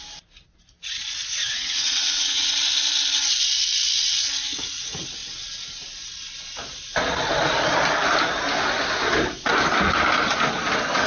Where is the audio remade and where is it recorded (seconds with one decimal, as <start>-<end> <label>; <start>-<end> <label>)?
0.0-1.4 recorded; 1.4-2.5 remade; 2.5-11.1 recorded